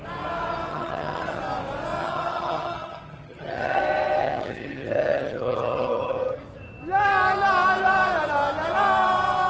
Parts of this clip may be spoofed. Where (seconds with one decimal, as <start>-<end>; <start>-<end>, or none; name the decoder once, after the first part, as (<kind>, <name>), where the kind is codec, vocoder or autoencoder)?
0.7-1.4 (vocoder, HiFi-GAN); 2.0-3.8; 4.2-6.4